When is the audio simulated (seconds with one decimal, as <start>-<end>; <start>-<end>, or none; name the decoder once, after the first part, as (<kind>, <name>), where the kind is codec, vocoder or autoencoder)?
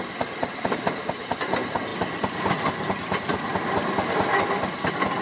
none